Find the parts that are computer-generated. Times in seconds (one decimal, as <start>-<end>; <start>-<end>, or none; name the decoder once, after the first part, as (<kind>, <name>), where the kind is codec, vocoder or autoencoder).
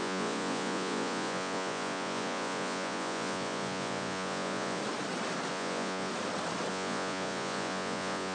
0.0-4.8 (vocoder, Vocos); 5.5-6.1; 6.7-8.3